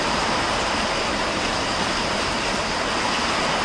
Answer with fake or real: fake